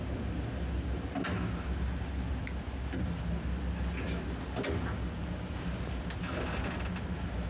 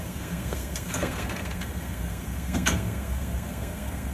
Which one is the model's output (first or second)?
second